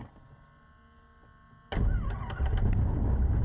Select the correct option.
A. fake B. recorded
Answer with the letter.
B